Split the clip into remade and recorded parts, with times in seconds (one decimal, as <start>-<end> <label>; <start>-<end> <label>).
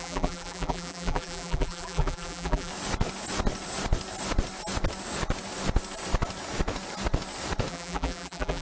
0.0-2.7 remade; 2.7-7.7 recorded; 7.7-8.6 remade